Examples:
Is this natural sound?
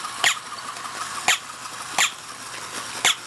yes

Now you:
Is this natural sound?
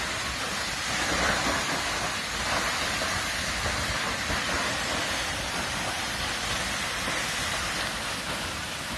yes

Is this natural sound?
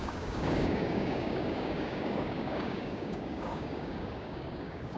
no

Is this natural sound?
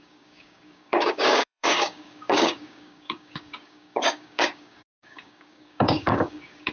no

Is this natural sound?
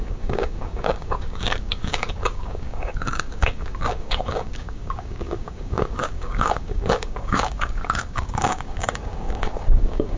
no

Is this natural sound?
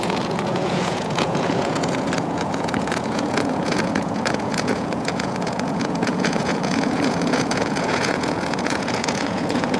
no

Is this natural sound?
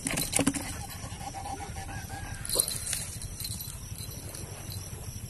yes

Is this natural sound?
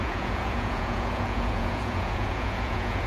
no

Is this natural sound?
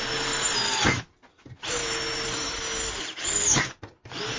yes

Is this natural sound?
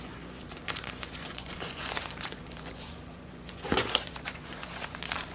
no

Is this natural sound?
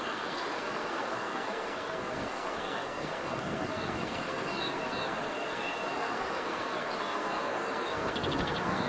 no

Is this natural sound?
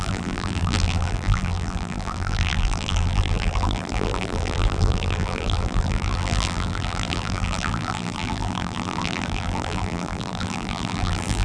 no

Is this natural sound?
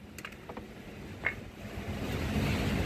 yes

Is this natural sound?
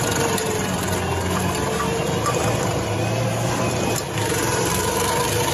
no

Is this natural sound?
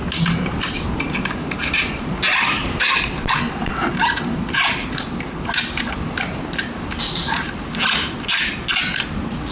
yes